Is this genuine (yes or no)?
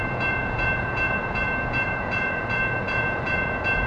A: no